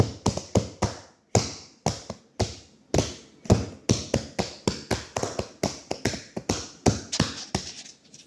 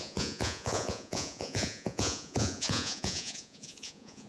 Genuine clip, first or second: first